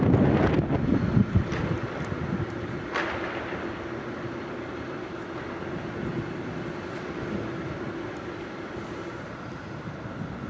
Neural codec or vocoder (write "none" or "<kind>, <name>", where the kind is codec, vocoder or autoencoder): none